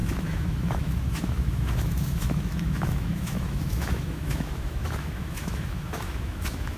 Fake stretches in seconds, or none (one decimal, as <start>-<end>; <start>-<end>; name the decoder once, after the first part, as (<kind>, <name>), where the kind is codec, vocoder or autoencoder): 0.0-6.8 (autoencoder, DAC-VAE)